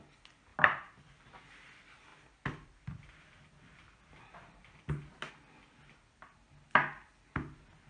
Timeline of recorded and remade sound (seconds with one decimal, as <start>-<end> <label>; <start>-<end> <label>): 0.0-0.5 recorded; 0.5-1.5 remade; 1.5-2.1 recorded; 2.1-5.3 remade; 5.3-7.9 recorded